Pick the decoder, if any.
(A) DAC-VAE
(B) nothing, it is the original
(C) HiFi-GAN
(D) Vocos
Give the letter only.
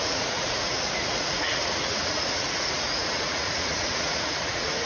D